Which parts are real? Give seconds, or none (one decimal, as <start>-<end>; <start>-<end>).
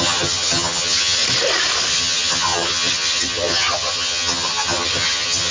1.2-1.9